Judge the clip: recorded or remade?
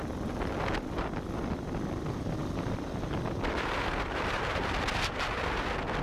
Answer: recorded